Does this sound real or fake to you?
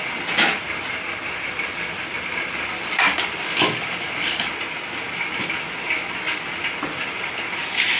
real